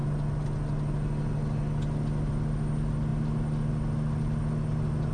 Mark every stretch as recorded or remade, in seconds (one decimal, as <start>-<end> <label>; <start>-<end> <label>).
0.0-5.1 recorded